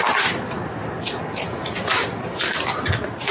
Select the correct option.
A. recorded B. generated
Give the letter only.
A